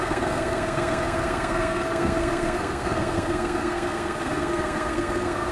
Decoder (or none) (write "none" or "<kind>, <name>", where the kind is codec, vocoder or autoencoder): codec, SNAC